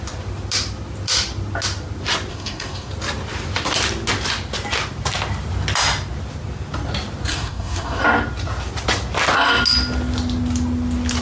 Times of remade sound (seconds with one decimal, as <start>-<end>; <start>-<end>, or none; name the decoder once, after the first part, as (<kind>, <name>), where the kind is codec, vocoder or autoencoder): 2.3-2.9 (codec, DAC); 7.3-8.0